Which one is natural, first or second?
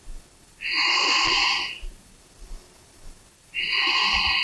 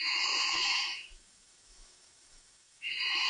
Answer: first